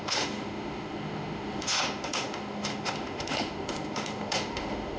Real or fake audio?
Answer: fake